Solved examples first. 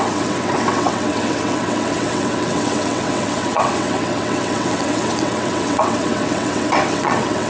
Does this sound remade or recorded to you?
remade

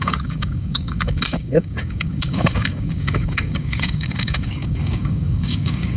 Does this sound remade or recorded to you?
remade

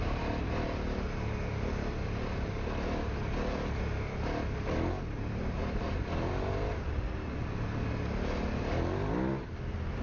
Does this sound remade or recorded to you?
recorded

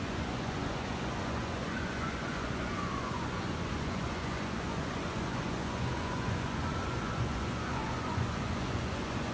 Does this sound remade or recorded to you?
remade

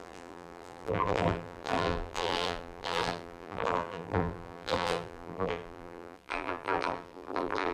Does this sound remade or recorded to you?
remade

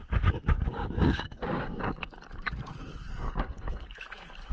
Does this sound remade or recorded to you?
remade